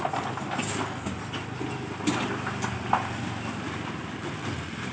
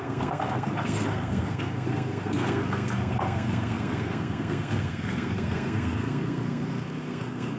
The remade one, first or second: second